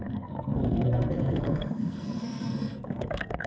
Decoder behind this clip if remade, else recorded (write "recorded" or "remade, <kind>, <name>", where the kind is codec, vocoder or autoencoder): remade, codec, SNAC